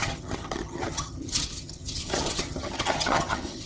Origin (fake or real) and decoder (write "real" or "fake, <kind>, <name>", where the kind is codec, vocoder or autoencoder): fake, vocoder, HiFi-GAN